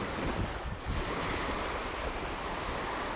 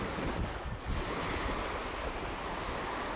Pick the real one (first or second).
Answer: second